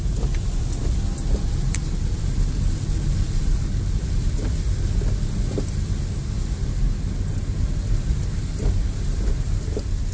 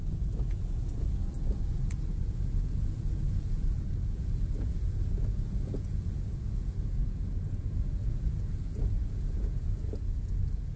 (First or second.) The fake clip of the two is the second